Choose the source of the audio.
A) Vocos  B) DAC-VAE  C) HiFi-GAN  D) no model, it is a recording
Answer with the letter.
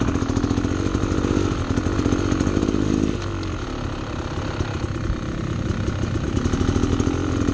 D